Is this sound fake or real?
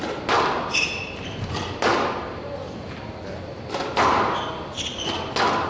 real